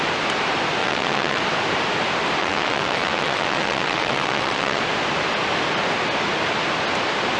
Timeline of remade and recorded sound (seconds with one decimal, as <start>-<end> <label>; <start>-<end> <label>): 0.0-0.8 recorded; 0.8-1.4 remade; 1.4-2.4 recorded; 2.4-4.8 remade; 4.8-7.4 recorded